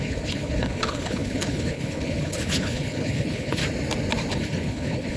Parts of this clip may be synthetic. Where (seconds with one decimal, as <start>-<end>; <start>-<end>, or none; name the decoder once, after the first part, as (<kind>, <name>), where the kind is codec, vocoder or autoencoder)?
0.0-3.6 (codec, HILCodec); 4.3-5.2